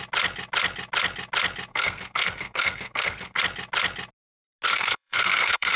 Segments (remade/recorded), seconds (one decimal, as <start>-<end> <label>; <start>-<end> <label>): 0.0-1.7 recorded; 1.7-3.4 remade; 3.4-4.7 recorded; 4.7-5.8 remade